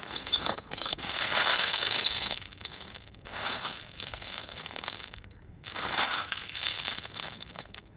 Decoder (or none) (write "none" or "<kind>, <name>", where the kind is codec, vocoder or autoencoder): codec, SNAC